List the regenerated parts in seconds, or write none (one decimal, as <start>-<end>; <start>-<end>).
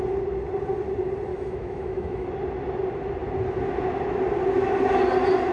1.3-2.3